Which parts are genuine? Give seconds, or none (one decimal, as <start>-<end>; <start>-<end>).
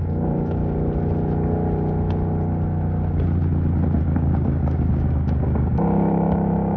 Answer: 0.6-4.0